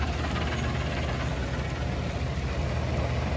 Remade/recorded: recorded